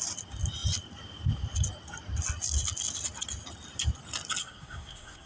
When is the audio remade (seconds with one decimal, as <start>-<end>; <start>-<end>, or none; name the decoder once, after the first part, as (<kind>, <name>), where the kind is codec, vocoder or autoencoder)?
4.4-5.3 (codec, SNAC)